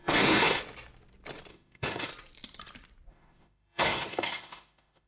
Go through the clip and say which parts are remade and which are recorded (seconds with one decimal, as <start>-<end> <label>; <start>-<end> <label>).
0.0-0.6 remade; 0.6-1.5 recorded; 1.5-2.1 remade; 2.1-3.1 recorded; 3.1-5.1 remade